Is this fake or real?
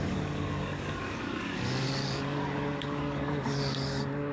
fake